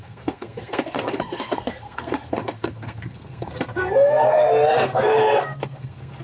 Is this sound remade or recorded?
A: remade